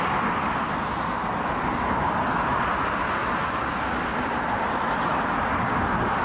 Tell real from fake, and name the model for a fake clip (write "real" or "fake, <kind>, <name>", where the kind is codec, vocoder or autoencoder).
real